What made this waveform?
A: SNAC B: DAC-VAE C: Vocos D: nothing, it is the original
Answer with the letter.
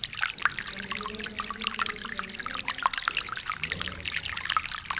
D